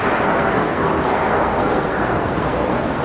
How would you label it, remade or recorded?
remade